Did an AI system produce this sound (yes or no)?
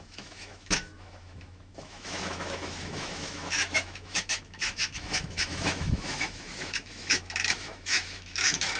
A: yes